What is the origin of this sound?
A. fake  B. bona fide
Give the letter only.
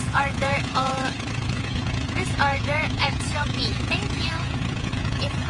A